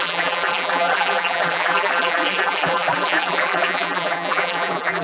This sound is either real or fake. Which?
fake